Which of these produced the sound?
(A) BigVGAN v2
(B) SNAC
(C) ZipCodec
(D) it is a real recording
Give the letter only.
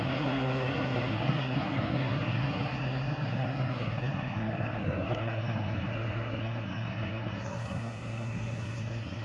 B